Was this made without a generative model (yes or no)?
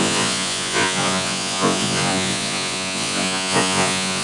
no